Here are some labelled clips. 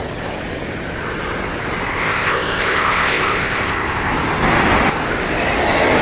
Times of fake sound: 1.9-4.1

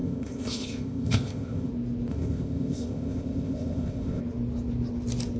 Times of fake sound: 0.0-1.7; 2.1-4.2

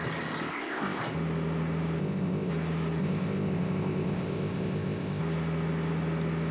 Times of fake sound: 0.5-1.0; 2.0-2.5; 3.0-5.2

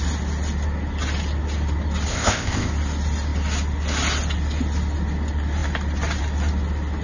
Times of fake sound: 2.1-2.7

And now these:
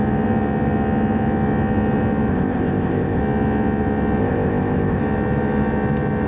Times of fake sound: 2.3-3.2; 4.2-5.0

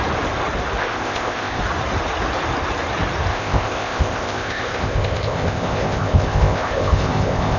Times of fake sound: 0.8-1.6; 3.3-7.6

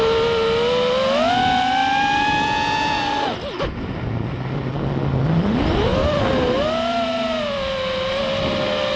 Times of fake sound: none

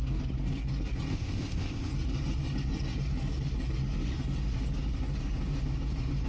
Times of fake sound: 1.1-1.9